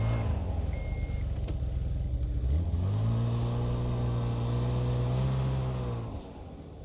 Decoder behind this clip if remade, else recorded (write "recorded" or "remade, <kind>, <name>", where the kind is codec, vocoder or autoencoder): recorded